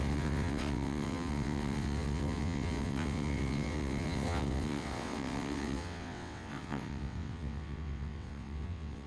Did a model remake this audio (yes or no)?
yes